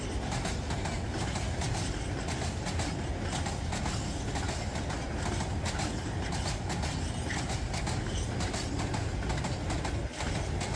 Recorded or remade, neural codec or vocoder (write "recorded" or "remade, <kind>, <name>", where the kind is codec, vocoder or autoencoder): recorded